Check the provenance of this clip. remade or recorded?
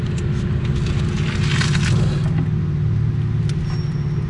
recorded